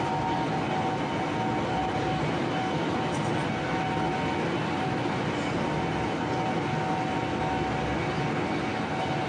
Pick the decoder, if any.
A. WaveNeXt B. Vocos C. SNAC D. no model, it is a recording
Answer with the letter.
D